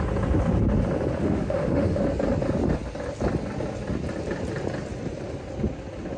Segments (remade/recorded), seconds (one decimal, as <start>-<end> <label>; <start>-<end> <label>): 0.0-1.2 recorded; 1.2-2.0 remade; 2.0-6.2 recorded